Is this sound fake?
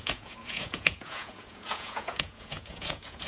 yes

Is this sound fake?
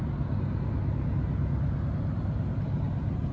no